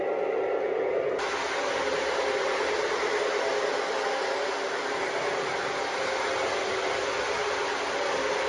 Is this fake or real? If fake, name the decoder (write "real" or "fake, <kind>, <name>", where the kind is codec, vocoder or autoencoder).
real